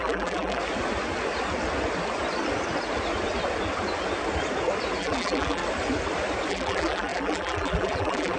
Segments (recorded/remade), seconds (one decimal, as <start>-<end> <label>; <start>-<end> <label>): 0.0-0.6 remade; 0.6-5.0 recorded; 5.0-5.6 remade; 5.6-6.5 recorded; 6.5-8.4 remade